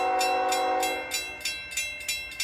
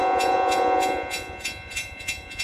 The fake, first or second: second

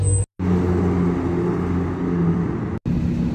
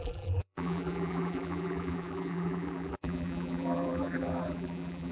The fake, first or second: second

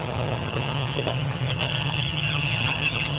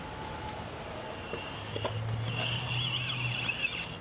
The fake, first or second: first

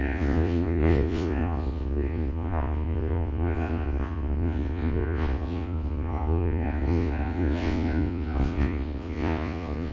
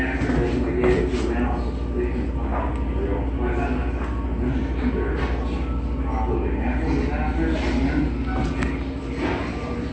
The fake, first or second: first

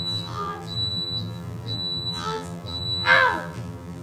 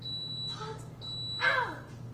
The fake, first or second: first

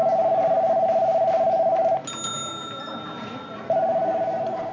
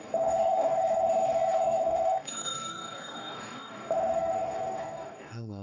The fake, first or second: second